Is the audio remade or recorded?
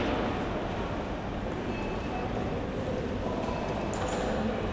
recorded